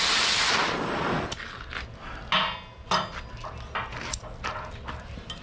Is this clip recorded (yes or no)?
yes